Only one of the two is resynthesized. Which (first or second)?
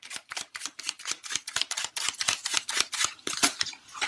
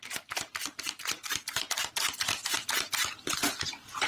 first